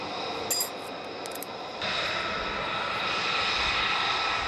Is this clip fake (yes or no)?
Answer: no